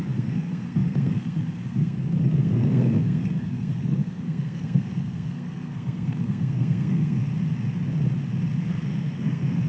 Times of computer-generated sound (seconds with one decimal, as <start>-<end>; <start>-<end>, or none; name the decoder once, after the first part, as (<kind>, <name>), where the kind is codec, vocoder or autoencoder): 0.0-7.3 (codec, SNAC); 8.6-9.7